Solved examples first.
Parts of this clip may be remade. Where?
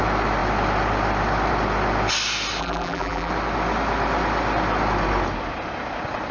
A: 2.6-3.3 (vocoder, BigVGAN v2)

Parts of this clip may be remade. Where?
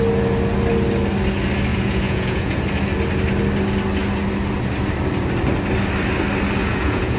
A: 1.7-2.6 (vocoder, Vocos); 6.6-7.2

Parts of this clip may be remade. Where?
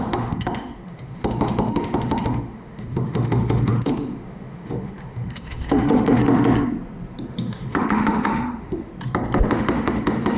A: 0.0-6.2 (autoencoder, DAC-VAE); 7.3-8.9; 9.5-10.4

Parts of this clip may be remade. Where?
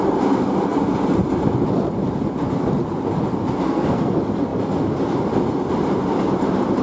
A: 3.6-4.1 (codec, SNAC)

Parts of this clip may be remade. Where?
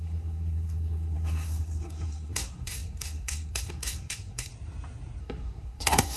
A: 0.0-4.5 (codec, SNAC); 5.2-6.2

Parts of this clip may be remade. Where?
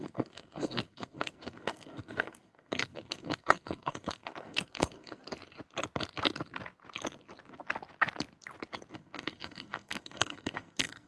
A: 0.0-5.2 (codec, SNAC); 8.9-11.1